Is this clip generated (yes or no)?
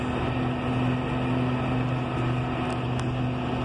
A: no